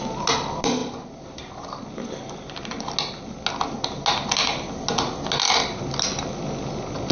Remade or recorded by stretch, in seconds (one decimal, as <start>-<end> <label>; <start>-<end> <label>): 0.0-7.1 recorded